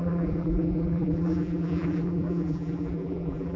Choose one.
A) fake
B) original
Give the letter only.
A